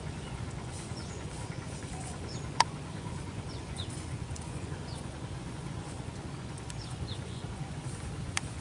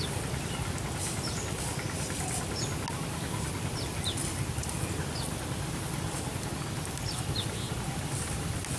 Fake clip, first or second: first